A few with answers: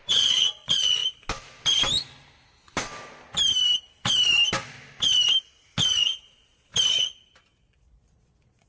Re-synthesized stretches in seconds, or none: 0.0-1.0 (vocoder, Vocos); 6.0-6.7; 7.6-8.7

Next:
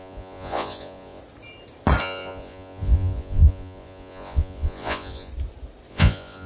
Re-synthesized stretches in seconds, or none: 0.0-1.2 (vocoder, Vocos); 2.0-5.3; 5.9-6.5

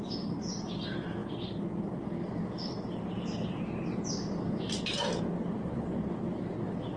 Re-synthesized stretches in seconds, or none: none

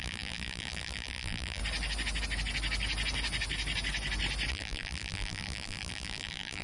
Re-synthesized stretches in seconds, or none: 0.0-1.6 (vocoder, BigVGAN v2); 4.5-6.6

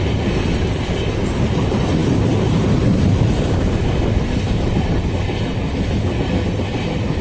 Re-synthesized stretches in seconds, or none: none

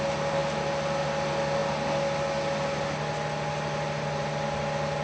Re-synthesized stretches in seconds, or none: none

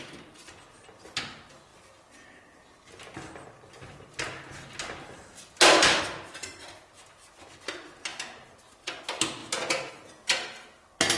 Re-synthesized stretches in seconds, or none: none